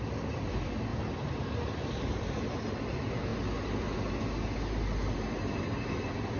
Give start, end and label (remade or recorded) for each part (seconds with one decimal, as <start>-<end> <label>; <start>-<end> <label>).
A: 0.0-0.9 recorded; 0.9-2.8 remade; 2.8-6.4 recorded